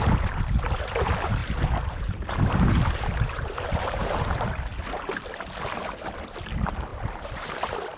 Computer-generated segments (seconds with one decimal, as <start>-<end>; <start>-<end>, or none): 1.4-4.5; 6.9-7.5